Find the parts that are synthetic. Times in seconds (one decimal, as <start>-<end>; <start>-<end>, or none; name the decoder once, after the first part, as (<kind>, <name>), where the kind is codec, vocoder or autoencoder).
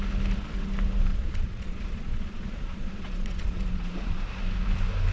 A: 1.1-4.2 (vocoder, Vocos)